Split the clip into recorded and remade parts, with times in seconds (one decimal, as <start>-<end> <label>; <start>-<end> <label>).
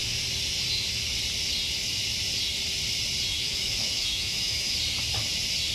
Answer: 0.0-3.3 recorded; 3.3-4.7 remade; 4.7-5.7 recorded